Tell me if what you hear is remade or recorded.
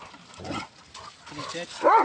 recorded